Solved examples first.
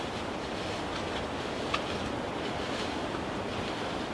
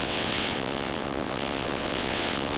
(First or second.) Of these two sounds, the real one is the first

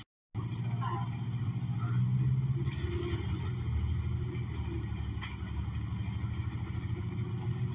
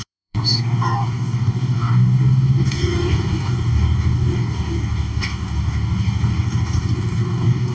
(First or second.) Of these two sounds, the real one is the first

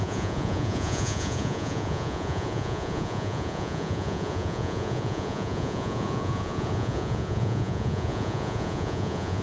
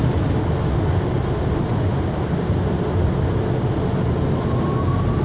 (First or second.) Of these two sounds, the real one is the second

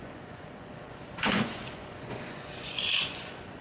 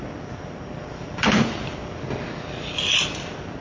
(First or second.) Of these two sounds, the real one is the second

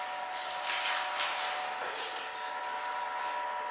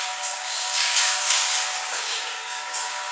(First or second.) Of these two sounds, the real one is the first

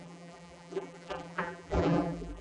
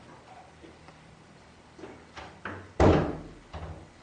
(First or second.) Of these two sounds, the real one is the second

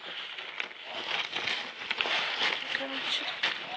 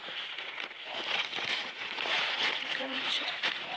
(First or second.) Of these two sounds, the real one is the first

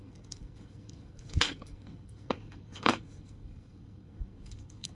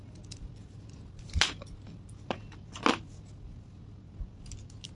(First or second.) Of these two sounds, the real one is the second